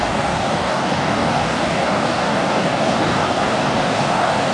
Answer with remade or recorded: remade